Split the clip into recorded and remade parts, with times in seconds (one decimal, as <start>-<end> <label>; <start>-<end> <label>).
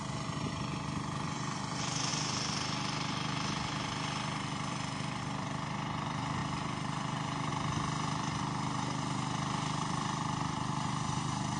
0.0-2.1 remade; 2.1-5.2 recorded; 5.2-6.4 remade; 6.4-7.5 recorded; 7.5-11.6 remade